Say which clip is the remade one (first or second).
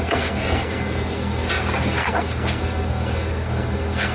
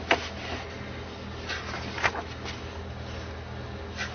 first